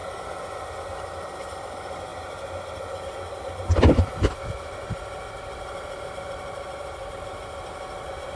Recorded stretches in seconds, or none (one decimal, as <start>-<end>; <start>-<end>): 0.0-8.4